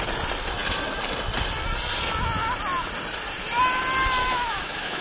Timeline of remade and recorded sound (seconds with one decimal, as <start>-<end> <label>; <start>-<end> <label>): 0.0-4.2 recorded; 4.2-5.0 remade